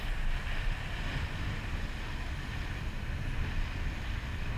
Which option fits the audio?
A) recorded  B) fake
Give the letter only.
A